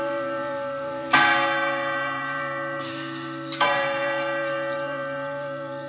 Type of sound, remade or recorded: remade